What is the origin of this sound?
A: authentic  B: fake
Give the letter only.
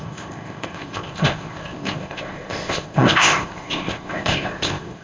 B